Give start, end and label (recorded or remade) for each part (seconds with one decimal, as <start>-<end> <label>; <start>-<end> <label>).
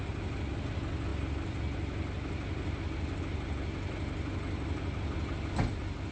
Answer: 0.0-6.1 recorded